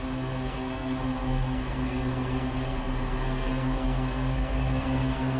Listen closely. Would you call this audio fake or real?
fake